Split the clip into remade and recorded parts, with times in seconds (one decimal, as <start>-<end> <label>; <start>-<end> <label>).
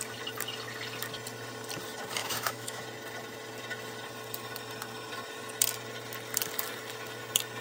0.0-2.2 recorded; 2.2-2.8 remade; 2.8-7.6 recorded